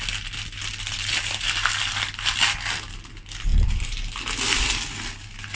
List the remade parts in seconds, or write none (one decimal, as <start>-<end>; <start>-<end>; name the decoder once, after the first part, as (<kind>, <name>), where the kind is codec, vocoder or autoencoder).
none